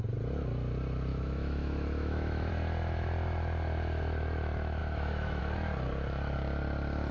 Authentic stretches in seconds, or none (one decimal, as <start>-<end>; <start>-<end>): 0.0-1.1; 2.5-4.8; 5.4-7.1

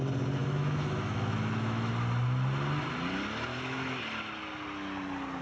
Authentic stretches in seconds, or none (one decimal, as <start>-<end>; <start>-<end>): 0.0-0.4; 1.9-3.5; 4.0-5.4

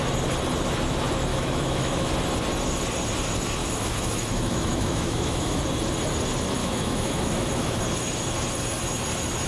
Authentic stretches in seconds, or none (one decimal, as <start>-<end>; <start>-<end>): 0.0-1.3; 2.1-3.6; 5.6-6.6; 7.8-9.5

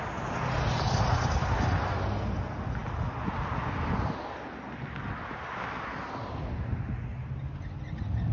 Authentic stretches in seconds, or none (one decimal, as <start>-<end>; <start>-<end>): 0.0-8.3

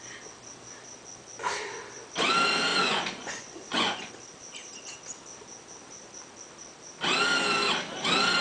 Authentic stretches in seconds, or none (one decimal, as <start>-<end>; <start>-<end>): 0.0-2.7; 4.1-8.4

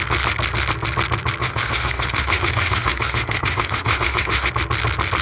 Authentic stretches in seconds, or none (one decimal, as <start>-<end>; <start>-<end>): 0.0-1.4; 4.5-5.2

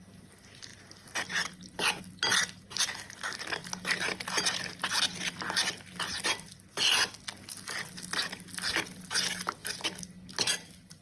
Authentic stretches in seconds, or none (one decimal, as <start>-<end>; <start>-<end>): 0.0-11.0

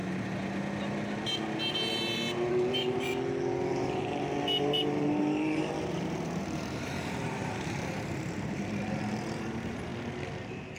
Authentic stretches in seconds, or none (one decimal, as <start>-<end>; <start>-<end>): 0.0-2.5; 3.1-3.7; 9.9-10.8